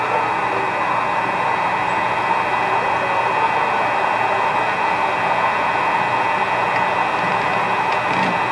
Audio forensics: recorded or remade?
recorded